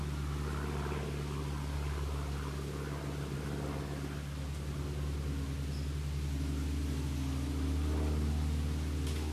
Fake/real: real